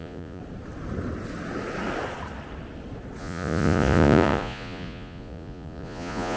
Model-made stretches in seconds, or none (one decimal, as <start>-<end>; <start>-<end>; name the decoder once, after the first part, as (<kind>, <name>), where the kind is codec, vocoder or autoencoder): 0.0-0.4 (vocoder, Vocos); 3.2-6.4